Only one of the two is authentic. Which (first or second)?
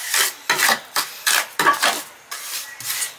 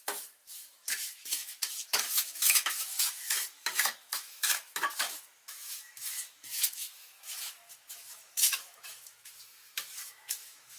first